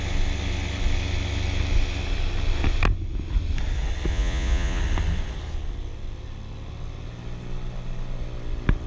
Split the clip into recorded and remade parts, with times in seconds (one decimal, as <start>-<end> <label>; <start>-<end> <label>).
0.0-4.1 recorded; 4.1-4.8 remade; 4.8-8.9 recorded